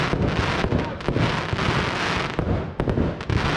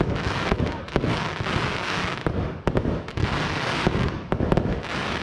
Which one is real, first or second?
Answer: first